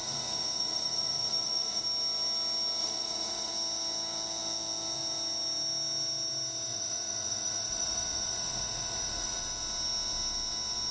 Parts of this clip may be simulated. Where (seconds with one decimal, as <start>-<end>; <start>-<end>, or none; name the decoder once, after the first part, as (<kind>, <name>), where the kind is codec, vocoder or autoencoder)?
0.0-1.8 (vocoder, Vocos); 2.8-3.5; 6.7-9.4